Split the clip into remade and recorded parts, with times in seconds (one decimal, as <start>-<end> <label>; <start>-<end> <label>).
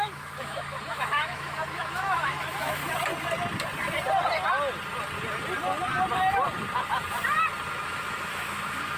0.0-2.8 remade; 2.8-7.7 recorded; 7.7-9.0 remade